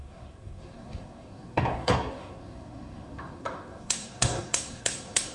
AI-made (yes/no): yes